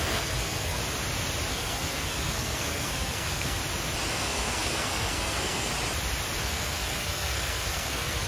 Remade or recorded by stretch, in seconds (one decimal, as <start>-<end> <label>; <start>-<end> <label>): 0.0-0.8 remade; 0.8-1.5 recorded; 1.5-3.6 remade; 3.6-4.1 recorded; 4.1-5.7 remade; 5.7-6.4 recorded; 6.4-8.3 remade